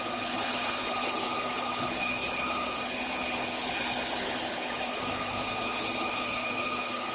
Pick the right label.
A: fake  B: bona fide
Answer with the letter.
A